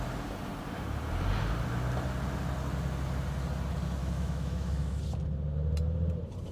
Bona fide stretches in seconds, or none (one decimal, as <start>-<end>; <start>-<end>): 0.0-4.0; 5.0-6.5